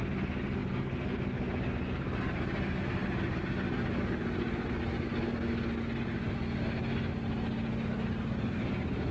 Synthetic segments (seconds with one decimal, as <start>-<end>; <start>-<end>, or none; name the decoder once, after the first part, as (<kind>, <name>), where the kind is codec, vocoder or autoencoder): none